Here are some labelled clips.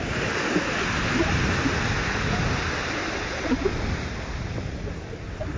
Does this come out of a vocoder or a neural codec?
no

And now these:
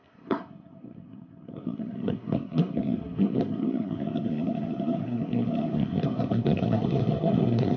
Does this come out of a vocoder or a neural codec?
yes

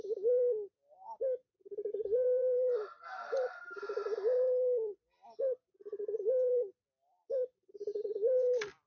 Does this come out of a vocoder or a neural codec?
yes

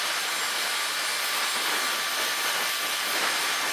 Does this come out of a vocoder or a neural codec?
no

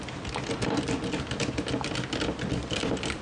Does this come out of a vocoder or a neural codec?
no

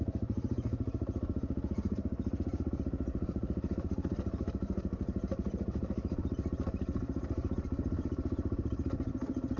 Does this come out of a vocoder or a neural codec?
yes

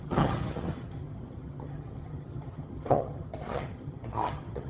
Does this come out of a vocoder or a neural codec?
yes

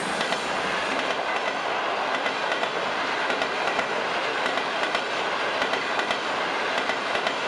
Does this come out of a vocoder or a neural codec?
no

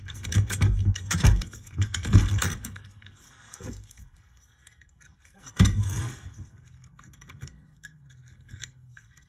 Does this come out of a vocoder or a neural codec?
yes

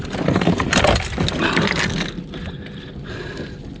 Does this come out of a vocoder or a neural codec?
no